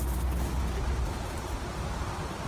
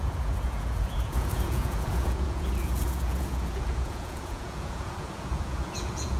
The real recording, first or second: first